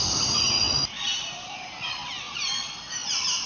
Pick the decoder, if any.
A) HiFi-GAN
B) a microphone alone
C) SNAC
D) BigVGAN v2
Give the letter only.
B